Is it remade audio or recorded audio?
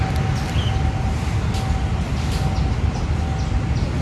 recorded